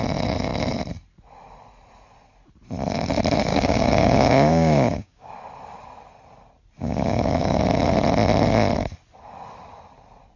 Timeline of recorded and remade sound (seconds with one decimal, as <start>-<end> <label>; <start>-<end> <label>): 0.0-3.5 recorded; 3.5-5.3 remade; 5.3-6.8 recorded; 6.8-7.6 remade; 7.6-10.4 recorded

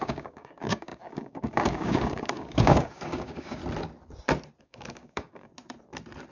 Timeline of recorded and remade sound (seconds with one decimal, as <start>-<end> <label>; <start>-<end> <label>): 0.0-3.6 remade; 3.6-4.6 recorded; 4.6-5.5 remade; 5.5-6.3 recorded